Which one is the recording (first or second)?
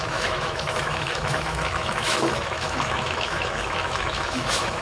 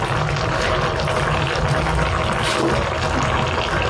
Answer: second